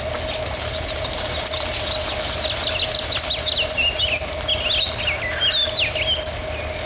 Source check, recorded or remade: recorded